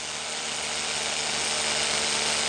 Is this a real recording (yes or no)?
yes